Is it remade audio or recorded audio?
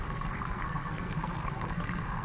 remade